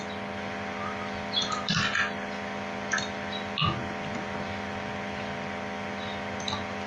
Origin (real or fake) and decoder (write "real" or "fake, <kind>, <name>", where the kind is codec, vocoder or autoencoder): real